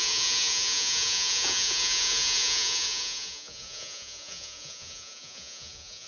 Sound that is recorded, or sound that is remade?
remade